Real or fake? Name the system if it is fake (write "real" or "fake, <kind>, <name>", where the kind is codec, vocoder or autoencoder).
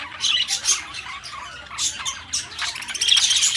real